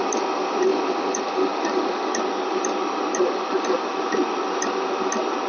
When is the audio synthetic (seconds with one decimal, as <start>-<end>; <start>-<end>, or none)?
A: none